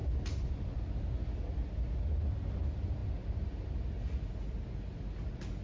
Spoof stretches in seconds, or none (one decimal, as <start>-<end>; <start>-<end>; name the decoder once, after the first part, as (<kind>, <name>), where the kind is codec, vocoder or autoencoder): none